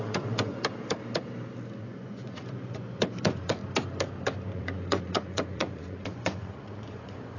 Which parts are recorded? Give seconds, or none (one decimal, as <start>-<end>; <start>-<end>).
0.5-1.8; 3.6-4.5